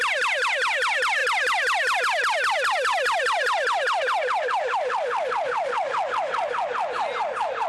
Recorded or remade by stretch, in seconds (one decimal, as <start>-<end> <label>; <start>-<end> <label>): 0.0-7.7 recorded